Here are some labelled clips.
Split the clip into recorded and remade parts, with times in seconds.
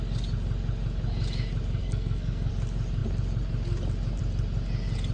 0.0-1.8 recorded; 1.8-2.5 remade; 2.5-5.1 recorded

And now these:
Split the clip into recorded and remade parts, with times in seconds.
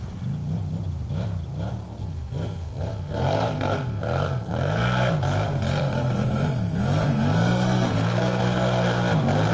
0.0-2.0 recorded; 2.0-5.1 remade; 5.1-5.7 recorded; 5.7-8.4 remade; 8.4-9.5 recorded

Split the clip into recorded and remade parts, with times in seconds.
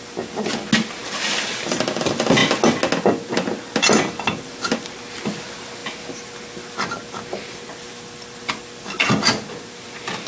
0.0-10.3 recorded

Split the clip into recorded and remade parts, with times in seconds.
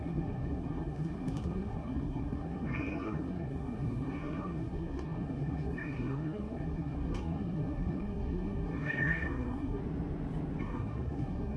0.0-9.8 remade; 9.8-10.6 recorded; 10.6-11.6 remade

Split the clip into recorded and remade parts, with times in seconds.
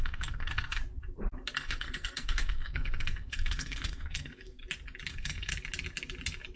0.0-0.8 remade; 0.8-1.6 recorded; 1.6-4.6 remade; 4.6-5.1 recorded; 5.1-5.5 remade; 5.5-6.6 recorded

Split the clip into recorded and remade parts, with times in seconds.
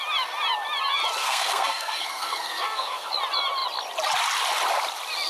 0.0-1.2 recorded; 1.2-3.1 remade; 3.1-5.3 recorded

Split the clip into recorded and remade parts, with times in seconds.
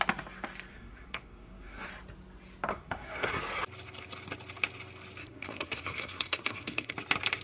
0.0-0.7 recorded; 0.7-1.9 remade; 1.9-2.7 recorded; 2.7-3.4 remade; 3.4-5.2 recorded; 5.2-6.9 remade; 6.9-7.4 recorded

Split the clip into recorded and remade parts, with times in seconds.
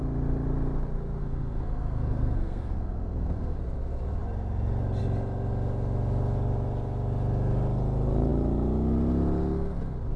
0.0-1.2 recorded; 1.2-3.6 remade; 3.6-10.2 recorded